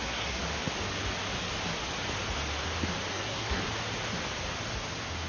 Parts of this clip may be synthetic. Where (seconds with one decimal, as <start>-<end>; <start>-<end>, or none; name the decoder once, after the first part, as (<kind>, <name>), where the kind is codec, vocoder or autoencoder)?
0.0-0.4 (codec, SNAC); 3.1-3.6